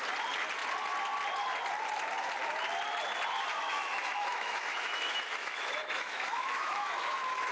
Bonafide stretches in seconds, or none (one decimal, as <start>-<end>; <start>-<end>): 0.0-3.5